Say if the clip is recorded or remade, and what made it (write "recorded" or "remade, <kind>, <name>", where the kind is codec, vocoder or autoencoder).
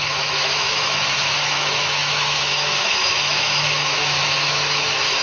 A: remade, autoencoder, DAC-VAE